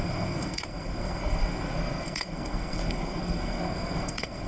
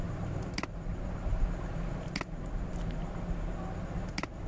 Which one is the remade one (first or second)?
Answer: first